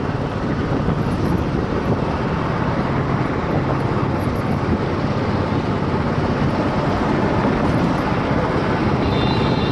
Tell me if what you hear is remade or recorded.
recorded